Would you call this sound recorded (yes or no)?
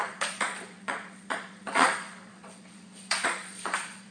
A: no